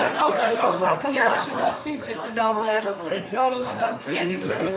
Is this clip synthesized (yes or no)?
yes